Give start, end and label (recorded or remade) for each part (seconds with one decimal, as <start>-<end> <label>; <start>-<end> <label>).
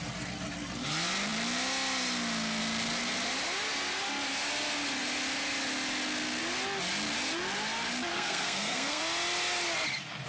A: 0.0-8.1 recorded; 8.1-9.0 remade; 9.0-10.3 recorded